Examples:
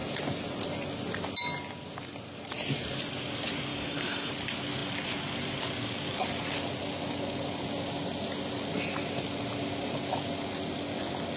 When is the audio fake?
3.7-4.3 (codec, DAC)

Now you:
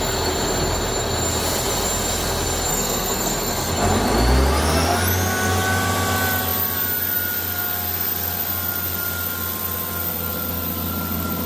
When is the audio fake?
2.7-3.7 (codec, SNAC)

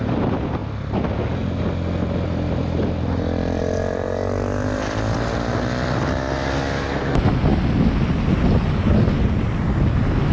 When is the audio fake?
none